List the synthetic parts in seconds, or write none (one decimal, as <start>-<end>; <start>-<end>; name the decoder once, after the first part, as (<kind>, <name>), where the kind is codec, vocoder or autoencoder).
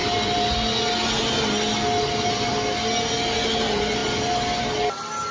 none